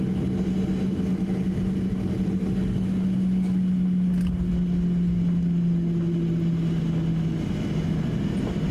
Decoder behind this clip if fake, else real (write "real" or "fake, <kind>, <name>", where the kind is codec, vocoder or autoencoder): real